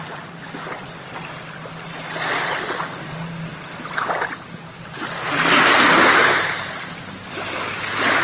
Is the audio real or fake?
real